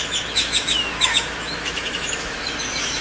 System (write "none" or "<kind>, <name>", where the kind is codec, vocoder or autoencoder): autoencoder, DAC-VAE